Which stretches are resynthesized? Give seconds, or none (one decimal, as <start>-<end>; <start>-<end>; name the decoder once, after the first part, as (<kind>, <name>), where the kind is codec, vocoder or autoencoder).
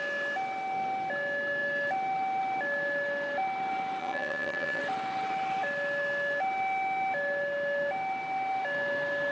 4.0-4.8 (vocoder, HiFi-GAN)